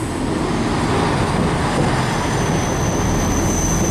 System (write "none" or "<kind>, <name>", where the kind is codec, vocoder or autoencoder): none